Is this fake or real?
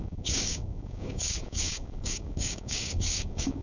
fake